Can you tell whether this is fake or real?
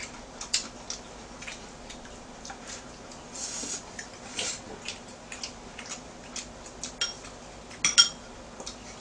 real